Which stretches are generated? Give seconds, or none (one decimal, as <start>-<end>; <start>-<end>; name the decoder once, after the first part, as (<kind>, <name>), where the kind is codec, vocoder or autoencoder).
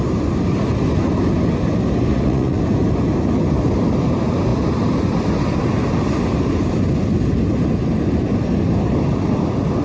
2.1-2.6 (vocoder, Vocos)